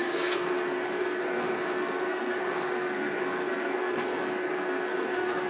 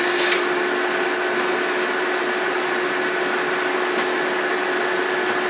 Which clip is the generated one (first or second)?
first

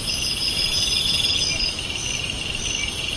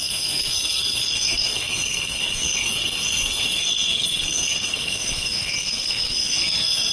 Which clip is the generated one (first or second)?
second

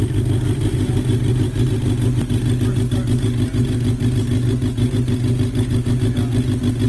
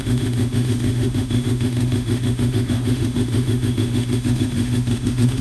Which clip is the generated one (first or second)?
second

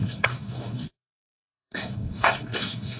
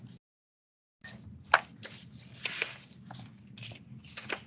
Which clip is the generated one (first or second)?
first